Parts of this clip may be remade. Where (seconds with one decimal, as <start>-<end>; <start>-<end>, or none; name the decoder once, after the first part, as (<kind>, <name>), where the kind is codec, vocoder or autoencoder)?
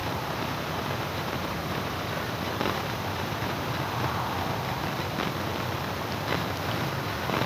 0.0-4.1 (vocoder, BigVGAN v2)